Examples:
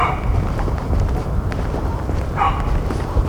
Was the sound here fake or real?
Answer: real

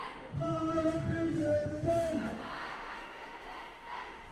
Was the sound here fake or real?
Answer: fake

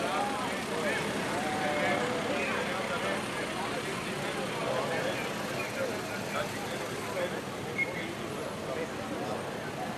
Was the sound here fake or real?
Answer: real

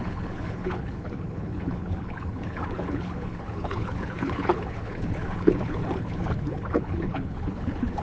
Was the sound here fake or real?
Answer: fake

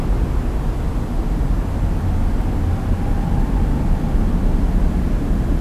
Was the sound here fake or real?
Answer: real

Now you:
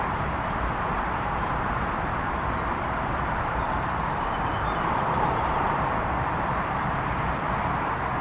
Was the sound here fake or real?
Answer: fake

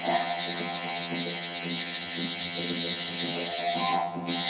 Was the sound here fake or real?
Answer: fake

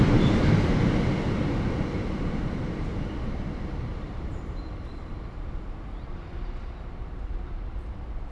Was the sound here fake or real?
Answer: fake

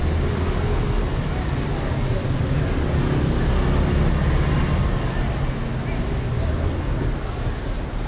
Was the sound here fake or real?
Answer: real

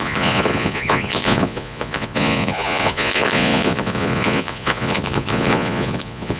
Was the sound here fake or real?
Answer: fake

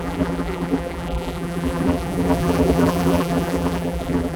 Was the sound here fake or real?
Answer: fake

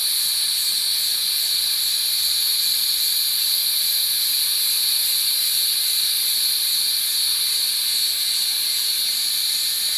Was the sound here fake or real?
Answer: real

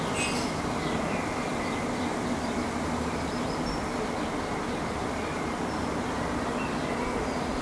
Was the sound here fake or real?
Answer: real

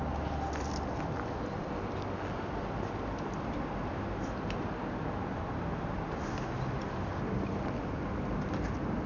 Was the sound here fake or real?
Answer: real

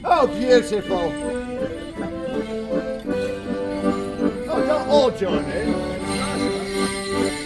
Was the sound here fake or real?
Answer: real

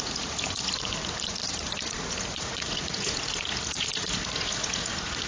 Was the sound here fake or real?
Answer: fake